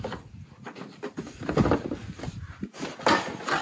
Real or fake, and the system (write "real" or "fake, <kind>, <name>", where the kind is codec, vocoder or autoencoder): real